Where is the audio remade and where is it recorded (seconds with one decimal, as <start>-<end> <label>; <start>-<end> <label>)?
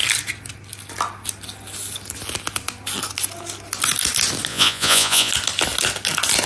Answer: 0.0-4.5 recorded; 4.5-5.3 remade; 5.3-6.5 recorded